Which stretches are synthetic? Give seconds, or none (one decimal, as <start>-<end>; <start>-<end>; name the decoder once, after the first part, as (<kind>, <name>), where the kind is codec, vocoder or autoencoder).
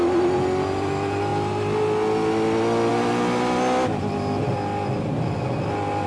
none